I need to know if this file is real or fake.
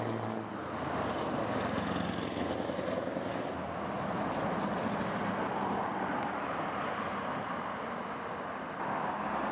real